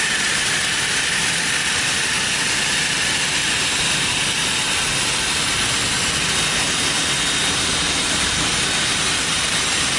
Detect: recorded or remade recorded